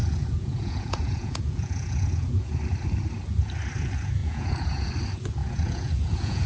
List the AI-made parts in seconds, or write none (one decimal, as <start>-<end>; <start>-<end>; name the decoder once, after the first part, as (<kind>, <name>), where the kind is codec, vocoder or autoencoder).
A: 0.0-2.6 (vocoder, Vocos); 4.2-4.9; 5.4-6.5